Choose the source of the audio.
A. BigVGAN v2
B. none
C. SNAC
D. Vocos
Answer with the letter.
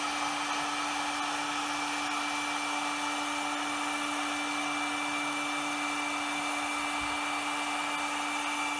B